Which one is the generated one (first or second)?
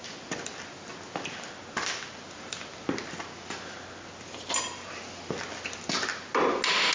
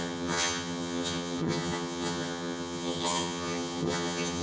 second